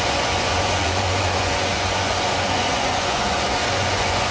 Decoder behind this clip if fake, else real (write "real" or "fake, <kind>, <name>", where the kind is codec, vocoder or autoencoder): fake, vocoder, Vocos